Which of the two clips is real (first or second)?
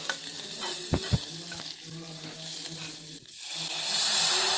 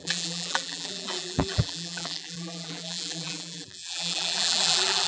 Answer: first